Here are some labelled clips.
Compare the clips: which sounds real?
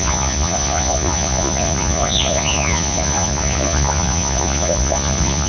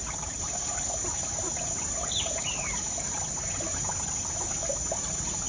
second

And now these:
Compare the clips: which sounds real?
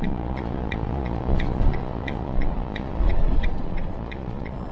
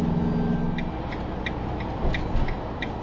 second